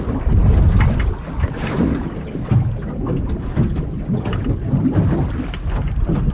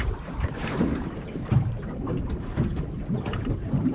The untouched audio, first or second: first